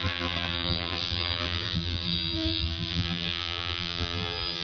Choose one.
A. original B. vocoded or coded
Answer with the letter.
B